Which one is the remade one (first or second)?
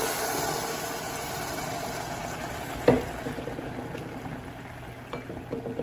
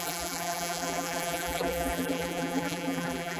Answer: second